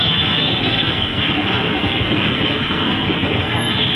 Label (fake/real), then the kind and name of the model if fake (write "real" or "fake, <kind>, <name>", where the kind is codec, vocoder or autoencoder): fake, codec, SNAC